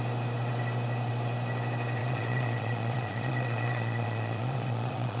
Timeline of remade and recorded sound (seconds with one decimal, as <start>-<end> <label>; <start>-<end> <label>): 0.0-2.0 recorded; 2.0-5.2 remade